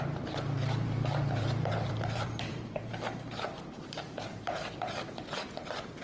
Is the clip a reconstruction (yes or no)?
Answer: yes